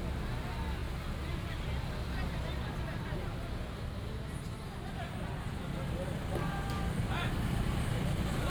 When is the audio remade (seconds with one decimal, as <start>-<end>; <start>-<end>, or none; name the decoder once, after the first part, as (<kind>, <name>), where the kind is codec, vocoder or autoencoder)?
none